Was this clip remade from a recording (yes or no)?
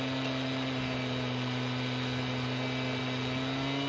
no